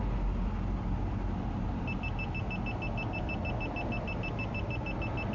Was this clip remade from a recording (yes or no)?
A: no